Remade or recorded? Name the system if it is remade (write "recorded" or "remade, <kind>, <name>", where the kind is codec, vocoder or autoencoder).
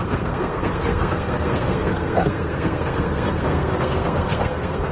remade, codec, SNAC